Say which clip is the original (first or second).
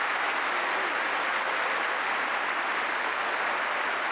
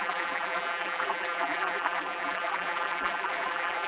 first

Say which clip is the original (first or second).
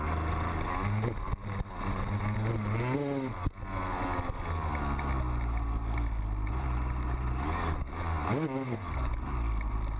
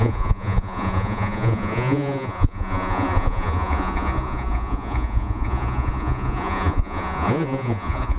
first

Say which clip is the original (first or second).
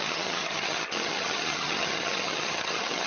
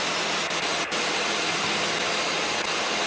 second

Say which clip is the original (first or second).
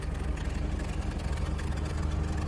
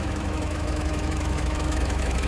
first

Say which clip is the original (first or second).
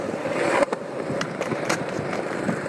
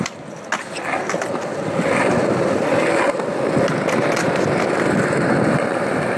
second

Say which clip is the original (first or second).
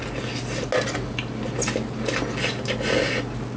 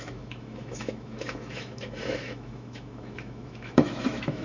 first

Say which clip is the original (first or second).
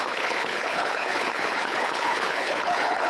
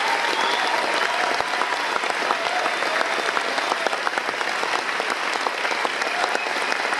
second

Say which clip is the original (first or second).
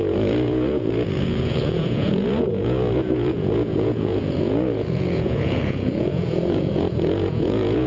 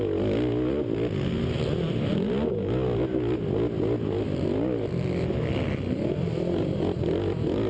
second